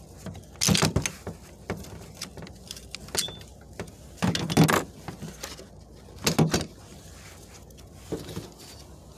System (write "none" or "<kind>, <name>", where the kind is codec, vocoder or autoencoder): none